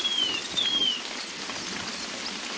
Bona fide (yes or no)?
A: yes